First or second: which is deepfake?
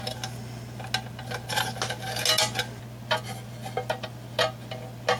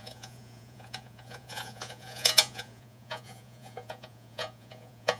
second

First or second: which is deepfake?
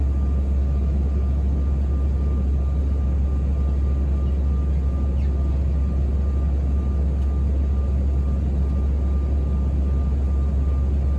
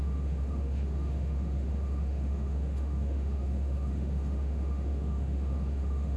second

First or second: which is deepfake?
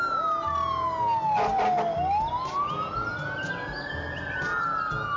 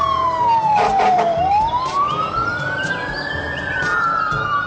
second